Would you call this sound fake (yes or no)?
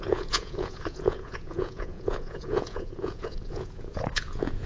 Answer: yes